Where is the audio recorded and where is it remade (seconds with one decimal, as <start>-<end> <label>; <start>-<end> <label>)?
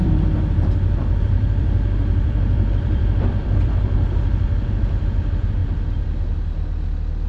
0.0-5.6 remade; 5.6-7.3 recorded